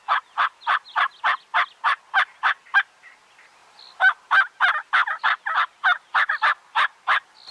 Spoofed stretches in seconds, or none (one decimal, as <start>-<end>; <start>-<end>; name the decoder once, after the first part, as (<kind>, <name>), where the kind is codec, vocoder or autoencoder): none